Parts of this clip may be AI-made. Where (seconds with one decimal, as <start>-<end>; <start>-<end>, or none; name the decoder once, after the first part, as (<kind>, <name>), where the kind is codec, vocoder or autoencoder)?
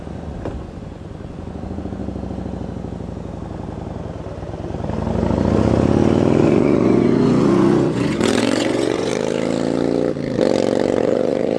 0.0-2.0 (vocoder, Vocos); 6.4-9.1; 11.0-11.6